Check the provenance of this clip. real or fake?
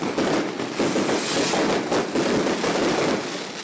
real